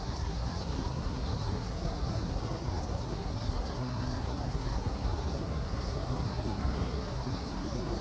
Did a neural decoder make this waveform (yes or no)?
yes